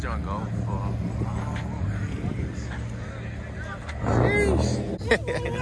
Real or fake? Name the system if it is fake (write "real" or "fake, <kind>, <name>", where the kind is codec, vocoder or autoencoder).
real